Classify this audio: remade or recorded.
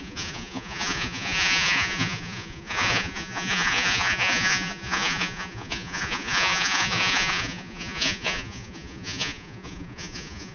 remade